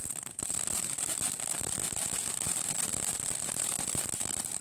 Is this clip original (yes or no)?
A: no